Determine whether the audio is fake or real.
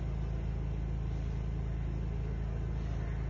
real